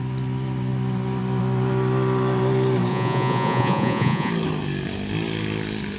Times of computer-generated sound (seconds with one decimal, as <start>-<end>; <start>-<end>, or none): 2.9-4.3